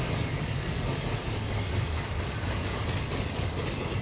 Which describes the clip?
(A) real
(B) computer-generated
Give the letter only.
B